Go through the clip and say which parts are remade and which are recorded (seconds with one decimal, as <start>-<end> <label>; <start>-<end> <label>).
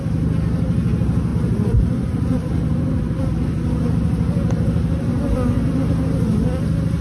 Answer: 0.0-1.3 recorded; 1.3-3.3 remade; 3.3-7.0 recorded